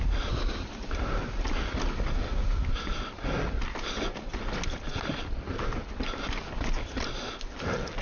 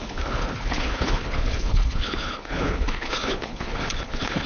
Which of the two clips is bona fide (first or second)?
first